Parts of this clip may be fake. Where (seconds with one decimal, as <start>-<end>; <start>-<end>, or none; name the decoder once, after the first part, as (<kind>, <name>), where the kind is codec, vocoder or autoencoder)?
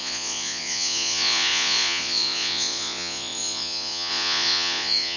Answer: 0.0-5.2 (vocoder, Vocos)